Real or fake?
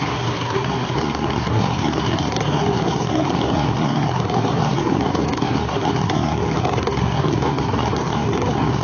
fake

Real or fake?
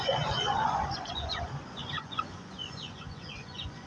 fake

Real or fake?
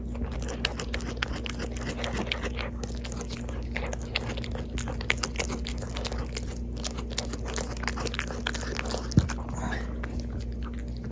real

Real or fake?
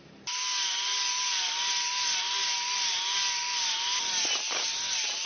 real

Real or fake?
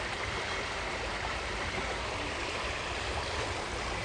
fake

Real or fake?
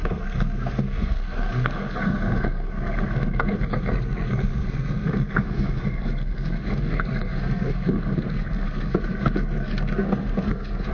fake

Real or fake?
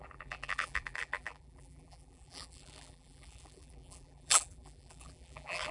fake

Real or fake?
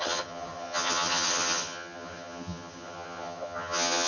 fake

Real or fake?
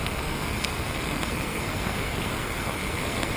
fake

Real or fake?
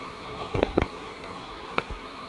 fake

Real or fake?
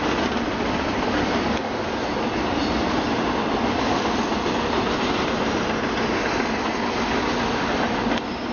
real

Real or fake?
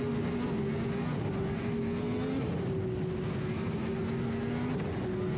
real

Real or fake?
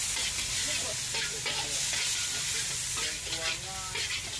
real